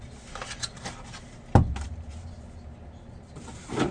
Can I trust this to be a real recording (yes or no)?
yes